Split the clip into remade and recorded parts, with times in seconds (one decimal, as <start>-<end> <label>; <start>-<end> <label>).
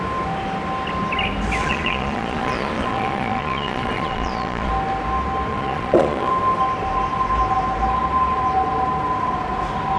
0.0-1.6 recorded; 1.6-4.7 remade; 4.7-5.5 recorded; 5.5-6.3 remade; 6.3-10.0 recorded